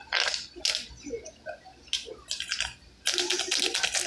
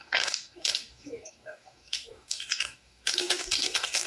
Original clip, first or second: first